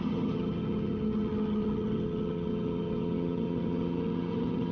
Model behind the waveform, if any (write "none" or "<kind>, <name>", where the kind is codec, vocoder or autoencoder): vocoder, HiFi-GAN